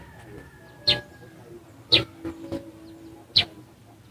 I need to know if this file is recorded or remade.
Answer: recorded